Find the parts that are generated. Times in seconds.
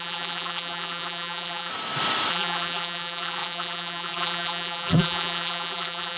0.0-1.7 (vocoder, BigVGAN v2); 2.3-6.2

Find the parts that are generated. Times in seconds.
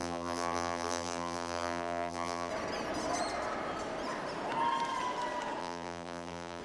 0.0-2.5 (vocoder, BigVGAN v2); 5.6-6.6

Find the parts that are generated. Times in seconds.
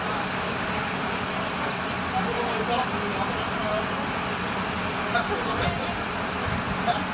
none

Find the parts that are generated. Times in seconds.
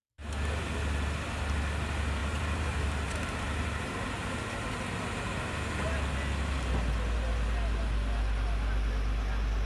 2.2-4.7 (vocoder, BigVGAN v2)